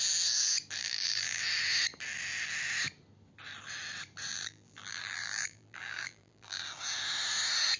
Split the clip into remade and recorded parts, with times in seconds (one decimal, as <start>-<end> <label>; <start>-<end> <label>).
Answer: 0.0-0.8 recorded; 0.8-1.4 remade; 1.4-4.3 recorded; 4.3-6.6 remade; 6.6-7.8 recorded